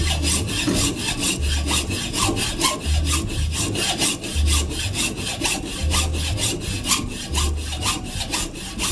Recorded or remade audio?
recorded